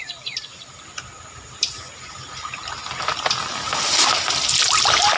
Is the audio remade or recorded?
recorded